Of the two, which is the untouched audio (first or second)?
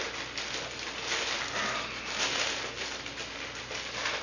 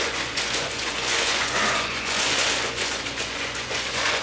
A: first